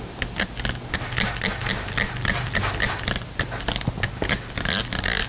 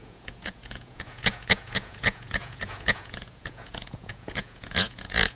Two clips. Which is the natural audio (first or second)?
first